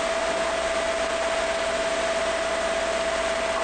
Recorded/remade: recorded